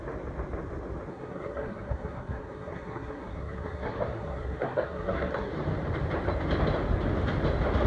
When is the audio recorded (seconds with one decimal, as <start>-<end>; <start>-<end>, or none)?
0.0-1.1; 5.5-7.9